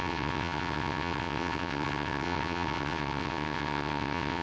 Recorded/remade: remade